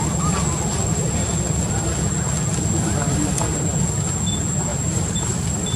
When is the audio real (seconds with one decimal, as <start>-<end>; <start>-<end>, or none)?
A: 0.0-4.7